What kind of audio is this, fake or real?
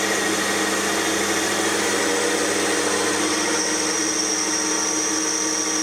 real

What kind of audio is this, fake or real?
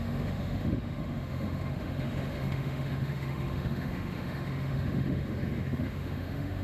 fake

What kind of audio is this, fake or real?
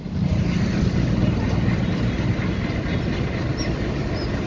real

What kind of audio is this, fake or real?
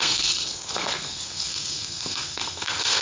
fake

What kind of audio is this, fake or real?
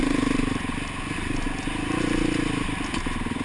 real